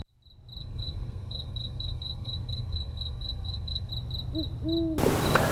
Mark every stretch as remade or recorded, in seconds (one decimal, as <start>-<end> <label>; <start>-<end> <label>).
0.0-0.6 recorded; 0.6-3.9 remade; 3.9-5.5 recorded